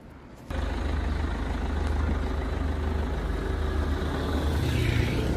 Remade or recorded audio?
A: recorded